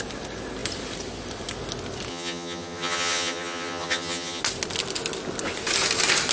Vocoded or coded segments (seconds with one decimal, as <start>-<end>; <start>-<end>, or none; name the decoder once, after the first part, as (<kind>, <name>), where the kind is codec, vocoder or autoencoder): 2.1-4.4 (vocoder, HiFi-GAN)

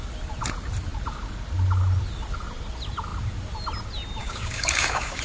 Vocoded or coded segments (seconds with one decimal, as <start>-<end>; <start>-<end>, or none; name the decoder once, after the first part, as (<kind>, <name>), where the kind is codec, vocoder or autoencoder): 4.2-5.2 (codec, DAC)

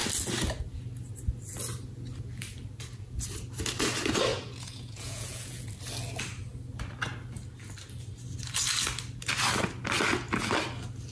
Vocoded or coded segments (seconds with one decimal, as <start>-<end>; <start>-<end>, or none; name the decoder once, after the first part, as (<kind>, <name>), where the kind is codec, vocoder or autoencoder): 4.3-5.7 (vocoder, Vocos)

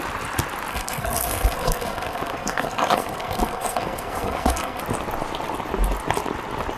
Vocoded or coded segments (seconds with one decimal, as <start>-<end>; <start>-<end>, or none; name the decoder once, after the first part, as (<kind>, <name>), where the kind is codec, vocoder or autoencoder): 0.7-4.8 (codec, SNAC)

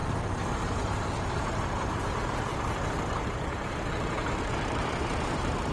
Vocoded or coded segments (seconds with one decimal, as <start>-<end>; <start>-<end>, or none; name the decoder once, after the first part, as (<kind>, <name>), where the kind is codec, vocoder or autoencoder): 0.6-2.5 (vocoder, BigVGAN v2); 4.4-5.7